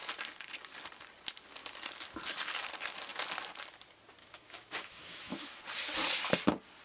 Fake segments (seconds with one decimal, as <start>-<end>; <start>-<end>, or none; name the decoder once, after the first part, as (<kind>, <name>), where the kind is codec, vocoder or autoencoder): 4.2-5.6 (autoencoder, DAC-VAE)